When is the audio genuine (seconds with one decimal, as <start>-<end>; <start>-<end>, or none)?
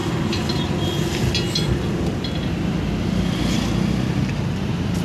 0.0-5.0